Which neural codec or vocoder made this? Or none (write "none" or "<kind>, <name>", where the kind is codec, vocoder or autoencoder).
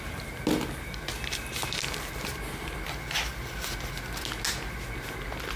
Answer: none